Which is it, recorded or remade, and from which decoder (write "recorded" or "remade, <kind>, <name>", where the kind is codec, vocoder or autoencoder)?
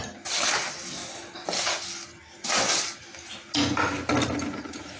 recorded